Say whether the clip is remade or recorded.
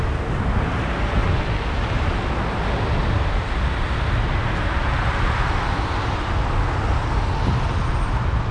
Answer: recorded